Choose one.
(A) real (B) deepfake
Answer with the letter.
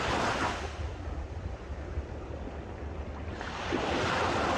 B